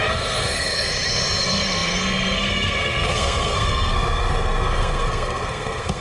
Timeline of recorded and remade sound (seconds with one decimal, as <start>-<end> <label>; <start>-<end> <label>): 0.0-0.9 remade; 0.9-1.4 recorded; 1.4-6.0 remade